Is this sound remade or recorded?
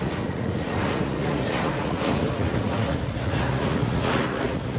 remade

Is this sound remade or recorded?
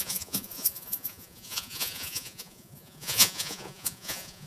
remade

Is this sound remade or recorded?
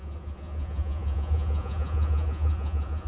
remade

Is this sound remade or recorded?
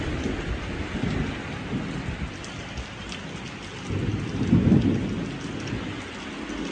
recorded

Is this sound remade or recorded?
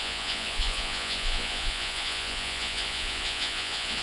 remade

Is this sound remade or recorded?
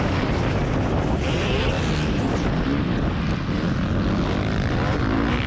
recorded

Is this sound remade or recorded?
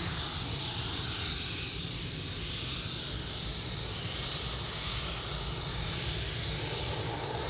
recorded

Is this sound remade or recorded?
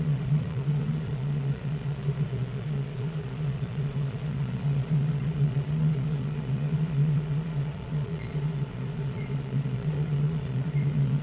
remade